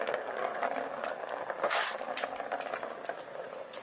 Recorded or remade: recorded